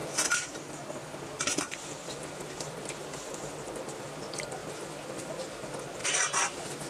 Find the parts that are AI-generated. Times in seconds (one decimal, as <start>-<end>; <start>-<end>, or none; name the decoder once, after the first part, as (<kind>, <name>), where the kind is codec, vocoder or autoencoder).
0.0-3.4 (vocoder, BigVGAN v2); 4.6-5.3; 6.0-6.9